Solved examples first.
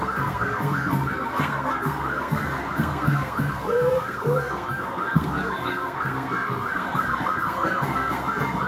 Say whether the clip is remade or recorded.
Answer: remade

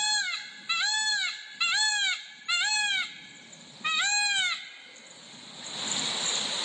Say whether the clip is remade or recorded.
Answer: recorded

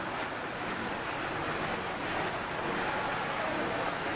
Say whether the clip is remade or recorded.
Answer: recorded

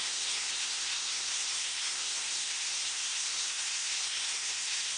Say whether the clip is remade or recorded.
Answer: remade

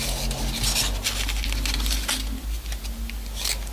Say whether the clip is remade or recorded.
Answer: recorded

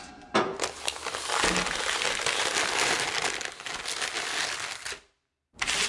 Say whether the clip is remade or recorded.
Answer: recorded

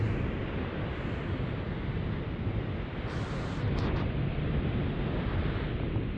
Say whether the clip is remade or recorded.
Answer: recorded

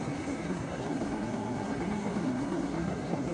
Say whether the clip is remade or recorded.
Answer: remade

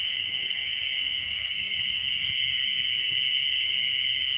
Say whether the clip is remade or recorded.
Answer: remade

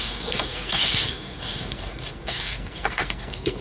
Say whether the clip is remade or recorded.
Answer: remade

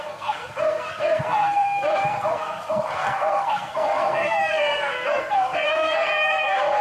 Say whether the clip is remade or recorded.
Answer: remade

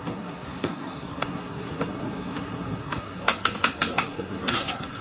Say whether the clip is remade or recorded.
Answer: remade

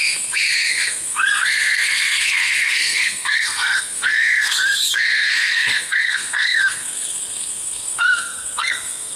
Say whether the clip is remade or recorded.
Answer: remade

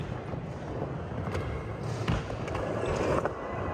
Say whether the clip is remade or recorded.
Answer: recorded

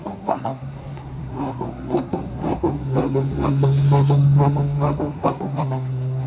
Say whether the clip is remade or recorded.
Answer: remade